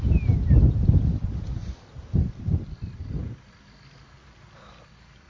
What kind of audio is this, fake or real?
real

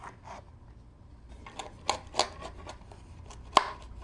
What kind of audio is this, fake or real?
real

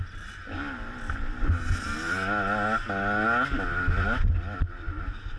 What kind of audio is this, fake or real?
real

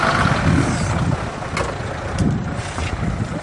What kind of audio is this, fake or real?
real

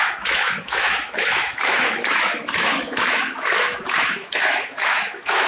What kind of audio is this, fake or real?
fake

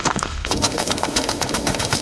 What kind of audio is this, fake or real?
fake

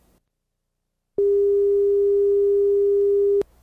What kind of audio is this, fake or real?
real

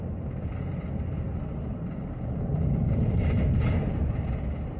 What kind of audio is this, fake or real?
real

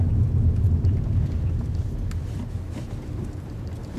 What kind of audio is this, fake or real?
real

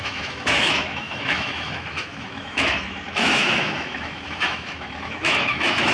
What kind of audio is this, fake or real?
fake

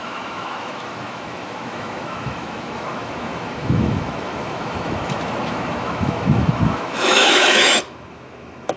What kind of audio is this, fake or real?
fake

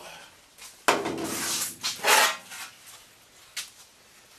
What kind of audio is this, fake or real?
real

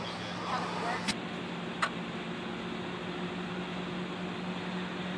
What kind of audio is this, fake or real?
real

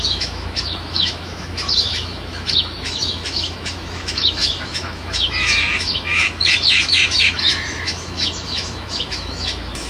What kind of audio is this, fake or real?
fake